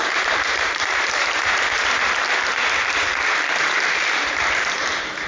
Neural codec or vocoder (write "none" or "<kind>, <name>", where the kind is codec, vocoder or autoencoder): vocoder, BigVGAN v2